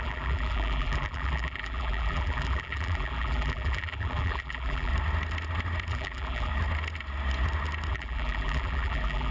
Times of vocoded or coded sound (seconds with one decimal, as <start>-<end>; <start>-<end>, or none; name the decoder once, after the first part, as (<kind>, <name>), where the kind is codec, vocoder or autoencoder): 0.0-4.9 (vocoder, BigVGAN v2); 5.9-6.5; 7.9-9.3